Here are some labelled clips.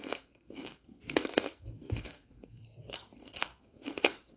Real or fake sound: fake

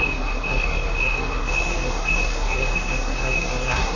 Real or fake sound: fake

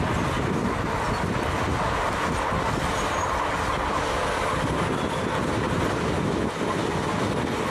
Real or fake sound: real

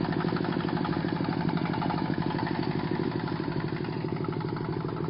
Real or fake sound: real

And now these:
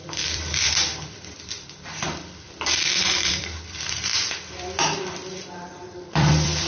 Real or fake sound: fake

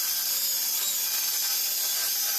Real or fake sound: real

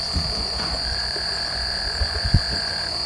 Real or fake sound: fake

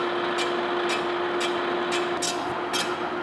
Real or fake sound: real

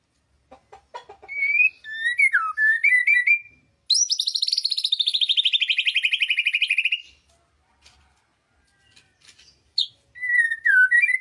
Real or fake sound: real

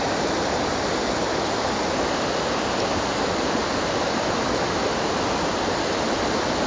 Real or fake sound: fake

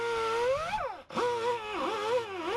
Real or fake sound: real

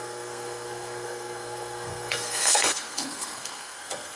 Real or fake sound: fake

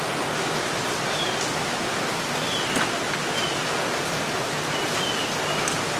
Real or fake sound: real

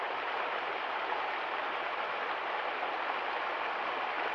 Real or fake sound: real